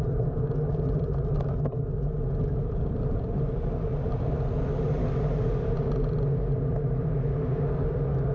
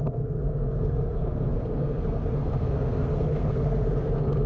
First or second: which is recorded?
first